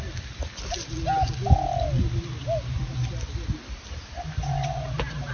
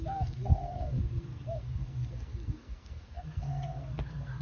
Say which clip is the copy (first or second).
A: second